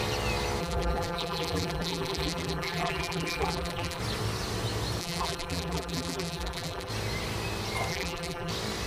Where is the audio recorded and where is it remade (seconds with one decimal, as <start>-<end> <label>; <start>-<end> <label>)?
0.0-0.6 recorded; 0.6-4.0 remade; 4.0-5.0 recorded; 5.0-6.9 remade; 6.9-7.9 recorded; 7.9-8.5 remade; 8.5-8.9 recorded